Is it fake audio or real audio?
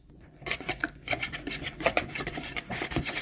fake